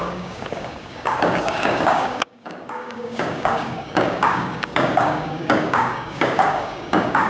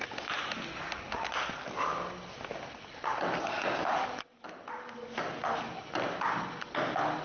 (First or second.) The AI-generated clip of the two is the first